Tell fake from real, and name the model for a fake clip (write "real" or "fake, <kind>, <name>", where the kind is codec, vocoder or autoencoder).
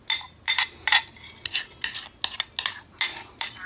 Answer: real